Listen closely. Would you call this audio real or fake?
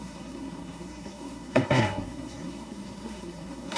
fake